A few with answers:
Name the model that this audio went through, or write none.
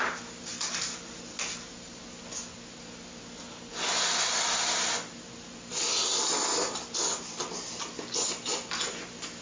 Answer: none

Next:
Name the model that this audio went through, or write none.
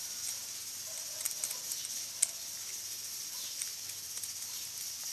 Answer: none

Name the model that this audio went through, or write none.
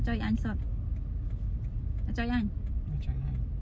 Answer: none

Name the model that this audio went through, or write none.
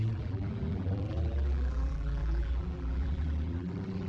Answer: vocoder, BigVGAN v2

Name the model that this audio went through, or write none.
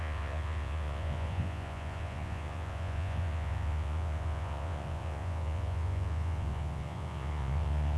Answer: vocoder, Vocos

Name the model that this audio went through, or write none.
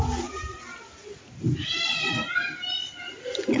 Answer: none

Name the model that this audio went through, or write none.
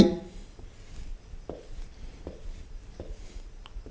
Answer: none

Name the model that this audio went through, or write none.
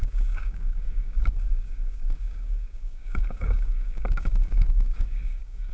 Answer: codec, DAC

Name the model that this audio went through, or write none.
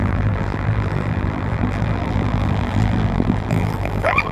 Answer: vocoder, BigVGAN v2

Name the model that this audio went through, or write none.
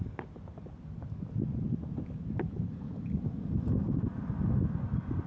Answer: none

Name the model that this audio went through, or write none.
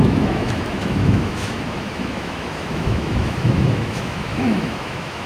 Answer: autoencoder, DAC-VAE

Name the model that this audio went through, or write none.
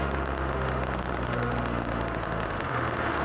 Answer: autoencoder, DAC-VAE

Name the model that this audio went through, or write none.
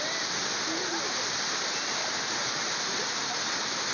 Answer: none